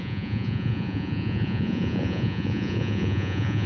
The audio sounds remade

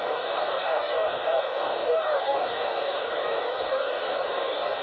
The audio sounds remade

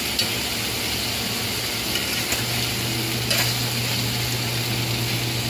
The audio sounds recorded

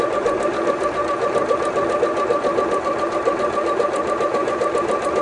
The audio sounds recorded